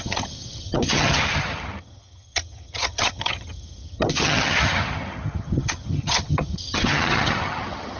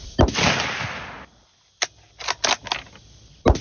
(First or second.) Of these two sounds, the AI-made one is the first